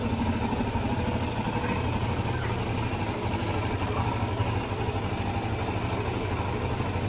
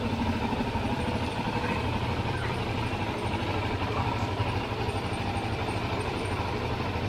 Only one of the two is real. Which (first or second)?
first